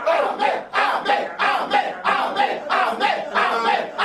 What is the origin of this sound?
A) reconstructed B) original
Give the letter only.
B